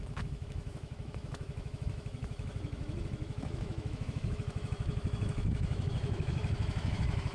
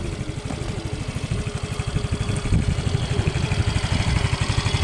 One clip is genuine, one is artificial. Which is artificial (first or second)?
first